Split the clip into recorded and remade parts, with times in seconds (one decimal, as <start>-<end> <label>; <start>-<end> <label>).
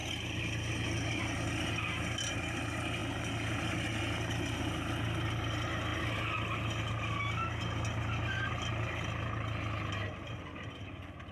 0.0-11.3 recorded